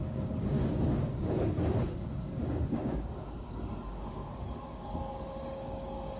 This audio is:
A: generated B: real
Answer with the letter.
A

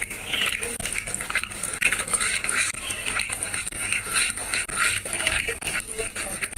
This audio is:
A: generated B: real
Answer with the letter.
A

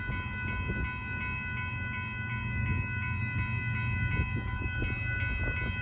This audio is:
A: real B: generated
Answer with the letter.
A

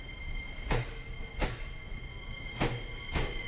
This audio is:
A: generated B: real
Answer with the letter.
B